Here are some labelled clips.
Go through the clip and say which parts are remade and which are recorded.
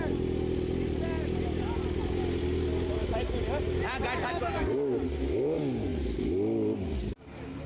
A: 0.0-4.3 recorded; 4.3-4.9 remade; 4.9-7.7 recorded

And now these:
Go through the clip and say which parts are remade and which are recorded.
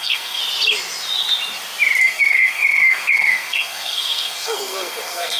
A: 0.0-0.4 remade; 0.4-2.0 recorded; 2.0-5.4 remade